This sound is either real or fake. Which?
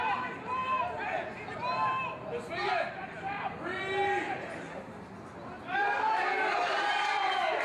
real